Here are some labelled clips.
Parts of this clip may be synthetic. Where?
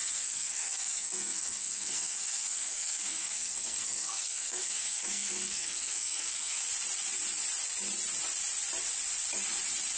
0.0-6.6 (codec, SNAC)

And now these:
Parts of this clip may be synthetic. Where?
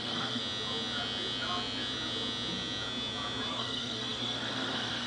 0.0-0.4 (codec, SNAC); 3.5-5.1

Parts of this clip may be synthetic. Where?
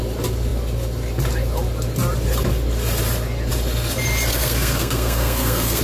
4.3-5.8 (codec, SNAC)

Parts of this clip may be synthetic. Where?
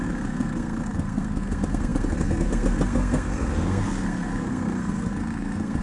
0.0-5.8 (codec, SNAC)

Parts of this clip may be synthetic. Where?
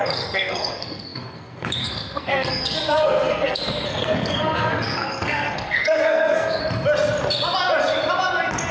0.0-6.6 (codec, SNAC)